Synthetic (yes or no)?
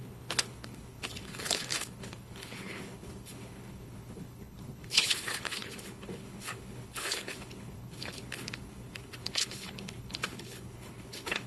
yes